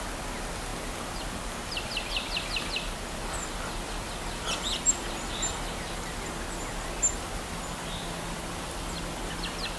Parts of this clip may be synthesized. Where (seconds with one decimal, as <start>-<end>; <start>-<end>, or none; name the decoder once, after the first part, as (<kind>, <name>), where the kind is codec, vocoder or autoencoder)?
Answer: none